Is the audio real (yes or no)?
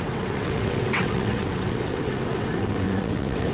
no